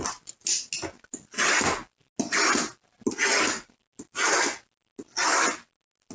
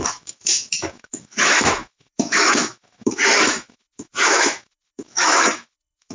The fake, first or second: second